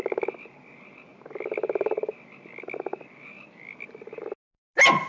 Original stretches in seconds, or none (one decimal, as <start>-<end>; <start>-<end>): 0.0-5.1